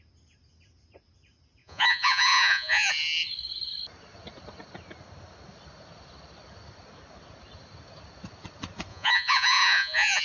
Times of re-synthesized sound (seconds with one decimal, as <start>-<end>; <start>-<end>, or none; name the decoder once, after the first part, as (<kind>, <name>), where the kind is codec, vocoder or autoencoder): 1.6-2.9 (vocoder, Vocos); 8.9-10.2